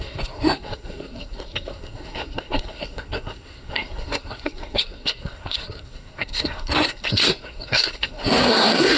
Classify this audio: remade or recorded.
remade